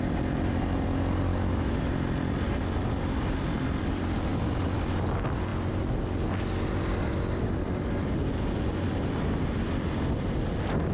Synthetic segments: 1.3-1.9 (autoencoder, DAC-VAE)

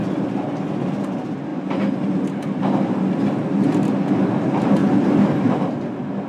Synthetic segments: none

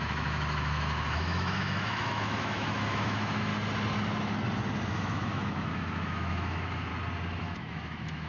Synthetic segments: 0.0-3.5 (autoencoder, DAC-VAE); 4.9-6.9; 7.4-8.3

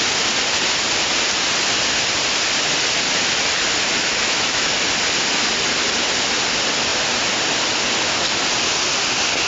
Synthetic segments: 4.1-4.7 (autoencoder, DAC-VAE)

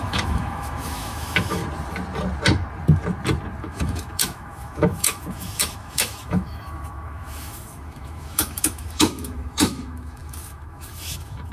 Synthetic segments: 0.0-1.6 (autoencoder, DAC-VAE); 3.6-11.5

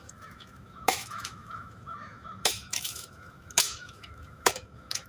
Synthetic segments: 0.0-5.1 (autoencoder, DAC-VAE)